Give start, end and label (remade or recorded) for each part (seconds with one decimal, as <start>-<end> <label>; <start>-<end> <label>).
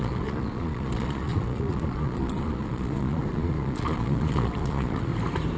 0.0-5.1 remade; 5.1-5.6 recorded